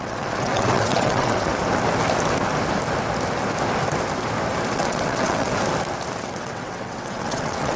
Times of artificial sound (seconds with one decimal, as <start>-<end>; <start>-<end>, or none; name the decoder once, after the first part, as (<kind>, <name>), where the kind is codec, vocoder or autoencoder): 0.0-1.5 (vocoder, WaveNeXt); 4.7-5.5; 6.2-7.8